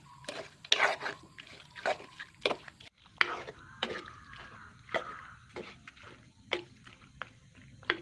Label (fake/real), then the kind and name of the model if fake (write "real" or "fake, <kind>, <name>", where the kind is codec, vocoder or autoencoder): real